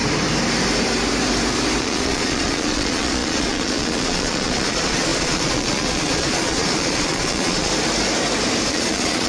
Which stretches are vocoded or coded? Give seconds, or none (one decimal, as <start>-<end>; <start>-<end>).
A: 1.8-7.7; 8.7-9.3